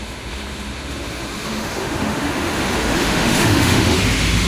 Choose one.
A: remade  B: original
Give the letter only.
A